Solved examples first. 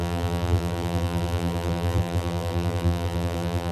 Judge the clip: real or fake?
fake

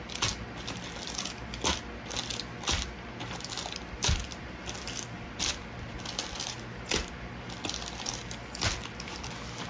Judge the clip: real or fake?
real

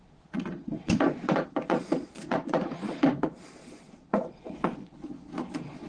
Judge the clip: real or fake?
fake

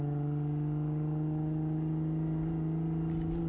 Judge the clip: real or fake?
real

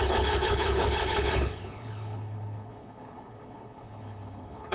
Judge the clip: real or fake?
fake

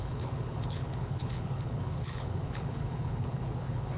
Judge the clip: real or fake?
fake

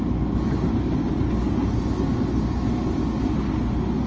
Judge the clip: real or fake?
real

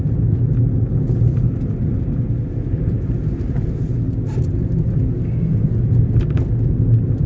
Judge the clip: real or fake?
real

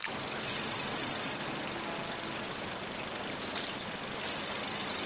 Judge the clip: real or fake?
real